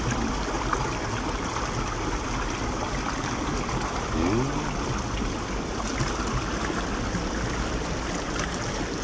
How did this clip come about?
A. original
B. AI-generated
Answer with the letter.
A